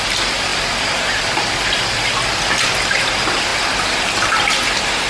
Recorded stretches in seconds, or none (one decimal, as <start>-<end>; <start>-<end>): 0.0-5.1